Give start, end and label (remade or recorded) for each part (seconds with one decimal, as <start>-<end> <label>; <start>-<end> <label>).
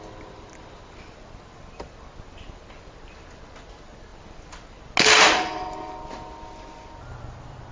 0.0-7.7 recorded